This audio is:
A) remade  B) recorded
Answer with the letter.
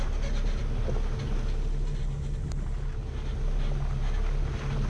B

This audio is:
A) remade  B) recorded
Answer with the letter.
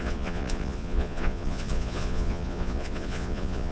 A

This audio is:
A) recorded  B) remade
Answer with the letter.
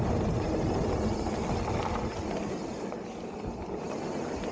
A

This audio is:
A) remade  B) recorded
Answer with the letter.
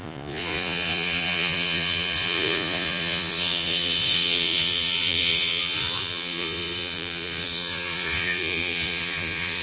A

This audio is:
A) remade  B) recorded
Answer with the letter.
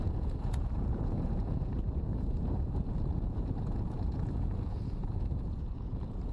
A